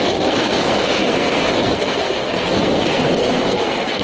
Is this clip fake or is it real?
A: fake